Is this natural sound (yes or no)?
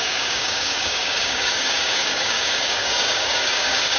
no